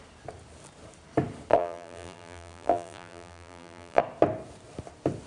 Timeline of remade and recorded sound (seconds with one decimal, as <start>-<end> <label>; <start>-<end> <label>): 0.0-1.5 recorded; 1.5-4.0 remade; 4.0-5.3 recorded